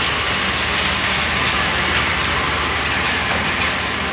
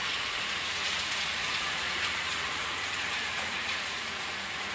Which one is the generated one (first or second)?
second